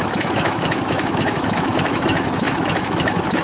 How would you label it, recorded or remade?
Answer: remade